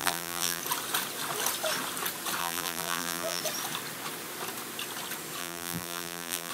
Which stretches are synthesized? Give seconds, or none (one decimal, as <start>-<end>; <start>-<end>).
0.0-0.6; 2.4-3.4; 5.4-6.5